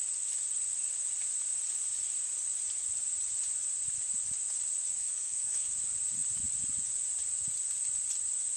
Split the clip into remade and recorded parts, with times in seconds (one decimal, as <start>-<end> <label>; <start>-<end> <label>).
0.0-5.0 recorded; 5.0-5.7 remade; 5.7-8.6 recorded